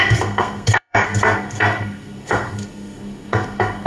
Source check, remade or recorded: remade